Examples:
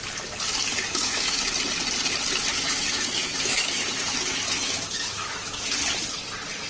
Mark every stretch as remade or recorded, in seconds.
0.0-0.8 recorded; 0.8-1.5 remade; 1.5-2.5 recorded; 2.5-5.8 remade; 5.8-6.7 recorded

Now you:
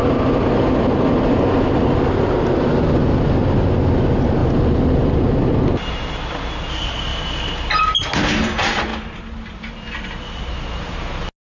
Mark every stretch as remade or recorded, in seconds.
0.0-11.4 recorded

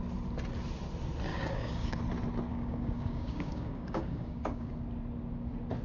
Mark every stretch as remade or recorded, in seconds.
0.0-1.3 recorded; 1.3-2.0 remade; 2.0-2.5 recorded; 2.5-4.7 remade; 4.7-5.8 recorded

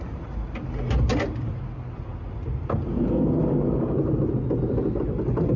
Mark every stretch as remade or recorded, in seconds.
0.0-5.6 recorded

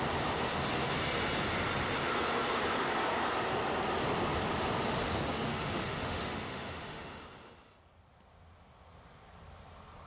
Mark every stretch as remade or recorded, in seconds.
0.0-5.5 recorded; 5.5-7.2 remade; 7.2-10.1 recorded

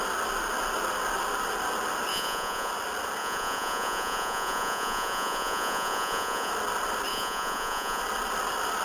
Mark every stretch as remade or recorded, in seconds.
0.0-2.1 recorded; 2.1-2.7 remade; 2.7-3.2 recorded; 3.2-6.5 remade; 6.5-7.1 recorded; 7.1-8.0 remade; 8.0-8.8 recorded

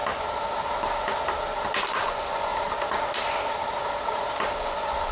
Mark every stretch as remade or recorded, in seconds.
0.0-1.9 recorded; 1.9-2.5 remade; 2.5-4.6 recorded; 4.6-5.1 remade